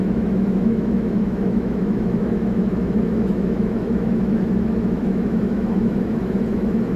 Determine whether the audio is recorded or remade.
remade